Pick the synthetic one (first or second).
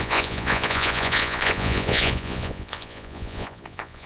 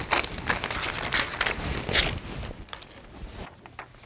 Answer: first